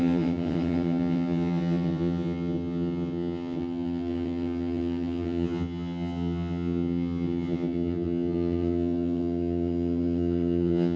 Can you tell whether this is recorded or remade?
remade